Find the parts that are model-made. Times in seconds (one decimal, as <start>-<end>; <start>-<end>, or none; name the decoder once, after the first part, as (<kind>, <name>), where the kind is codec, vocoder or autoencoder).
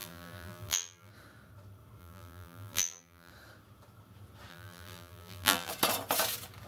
0.0-1.1 (vocoder, BigVGAN v2); 2.0-3.3; 4.5-5.7